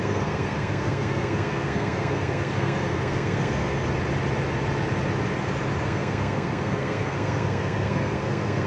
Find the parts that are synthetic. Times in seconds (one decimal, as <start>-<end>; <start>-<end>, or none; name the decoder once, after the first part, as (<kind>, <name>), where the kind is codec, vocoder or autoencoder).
0.0-3.8 (codec, SNAC); 5.8-8.7